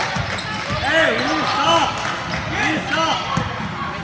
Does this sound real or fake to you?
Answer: real